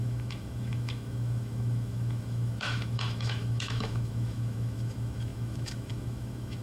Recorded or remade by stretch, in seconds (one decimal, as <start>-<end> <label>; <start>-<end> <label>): 0.0-6.6 remade